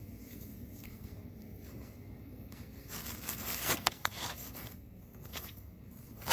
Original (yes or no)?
no